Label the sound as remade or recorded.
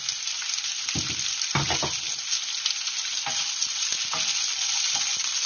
recorded